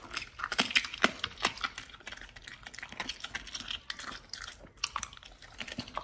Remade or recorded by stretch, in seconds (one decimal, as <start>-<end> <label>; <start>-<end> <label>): 0.0-6.0 recorded